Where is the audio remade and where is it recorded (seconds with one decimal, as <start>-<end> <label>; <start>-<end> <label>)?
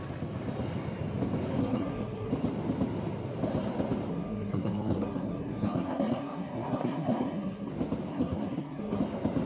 0.0-1.6 recorded; 1.6-2.3 remade; 2.3-4.1 recorded; 4.1-7.7 remade; 7.7-8.1 recorded; 8.1-9.0 remade; 9.0-9.5 recorded